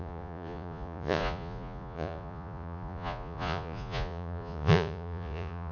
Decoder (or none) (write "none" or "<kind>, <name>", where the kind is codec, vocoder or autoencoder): vocoder, Vocos